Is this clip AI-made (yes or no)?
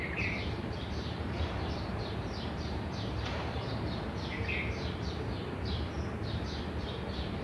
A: yes